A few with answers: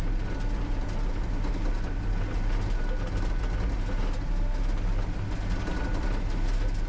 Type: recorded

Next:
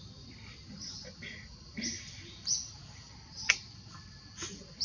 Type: recorded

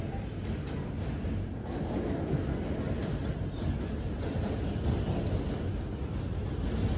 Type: recorded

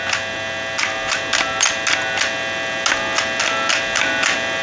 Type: recorded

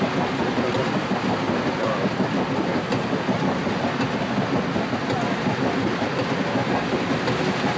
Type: recorded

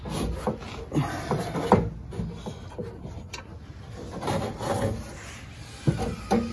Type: recorded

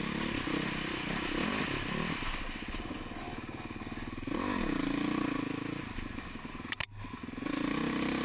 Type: recorded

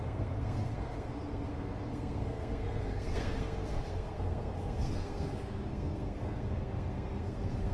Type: remade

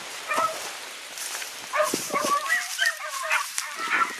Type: recorded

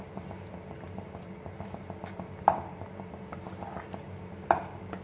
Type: recorded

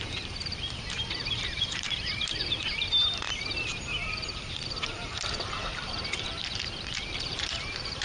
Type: remade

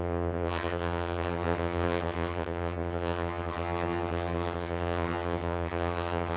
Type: remade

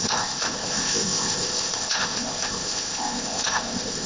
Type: remade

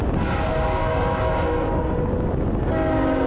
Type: recorded